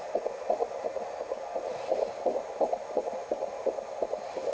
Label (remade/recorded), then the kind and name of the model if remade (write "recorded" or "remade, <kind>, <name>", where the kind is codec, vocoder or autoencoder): recorded